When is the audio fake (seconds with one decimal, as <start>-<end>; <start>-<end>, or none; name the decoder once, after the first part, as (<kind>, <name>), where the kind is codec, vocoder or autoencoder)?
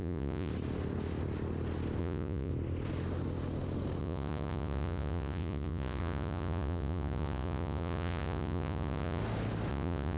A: 0.0-0.5 (vocoder, Vocos); 2.0-2.5; 4.0-9.2; 9.7-10.2